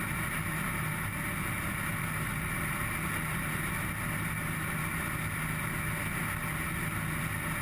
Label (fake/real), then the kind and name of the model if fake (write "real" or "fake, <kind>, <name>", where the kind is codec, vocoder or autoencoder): real